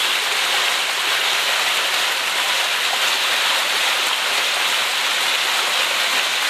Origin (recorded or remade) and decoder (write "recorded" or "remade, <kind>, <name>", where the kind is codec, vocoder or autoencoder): recorded